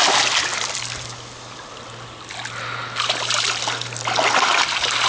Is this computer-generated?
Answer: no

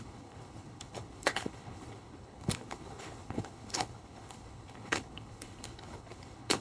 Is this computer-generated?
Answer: yes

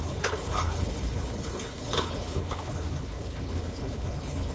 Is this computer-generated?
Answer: yes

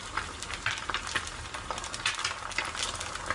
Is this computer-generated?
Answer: no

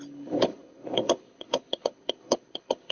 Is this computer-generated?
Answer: yes